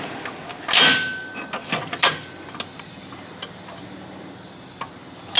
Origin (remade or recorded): recorded